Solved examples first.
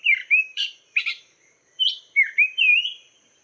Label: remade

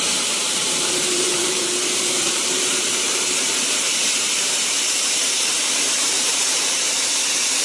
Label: remade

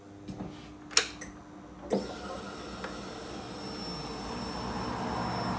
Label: recorded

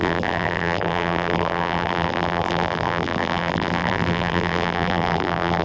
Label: remade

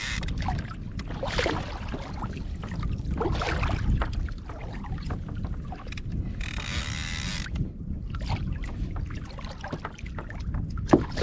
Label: recorded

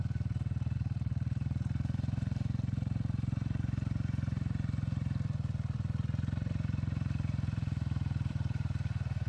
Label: remade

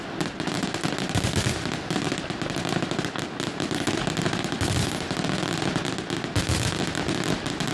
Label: recorded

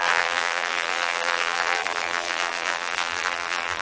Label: remade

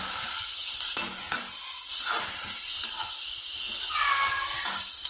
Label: recorded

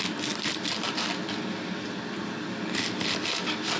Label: recorded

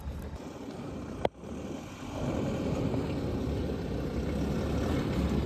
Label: remade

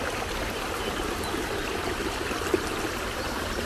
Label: recorded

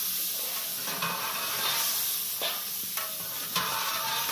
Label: recorded